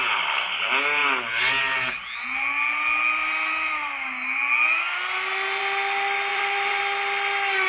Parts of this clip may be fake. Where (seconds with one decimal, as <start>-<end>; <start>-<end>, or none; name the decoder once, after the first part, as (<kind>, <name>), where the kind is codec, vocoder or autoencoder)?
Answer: 6.3-6.8 (vocoder, BigVGAN v2)